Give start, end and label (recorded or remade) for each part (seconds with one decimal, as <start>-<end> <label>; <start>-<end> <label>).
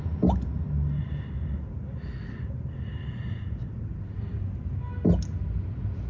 0.0-1.0 recorded; 1.0-4.7 remade; 4.7-6.1 recorded